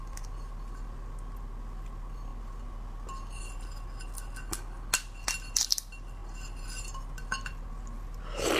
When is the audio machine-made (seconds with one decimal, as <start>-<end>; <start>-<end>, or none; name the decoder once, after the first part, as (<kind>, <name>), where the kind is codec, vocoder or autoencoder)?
none